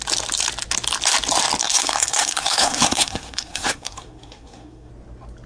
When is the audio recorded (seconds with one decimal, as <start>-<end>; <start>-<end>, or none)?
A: 0.0-1.6; 4.9-5.5